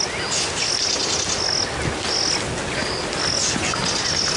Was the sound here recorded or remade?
recorded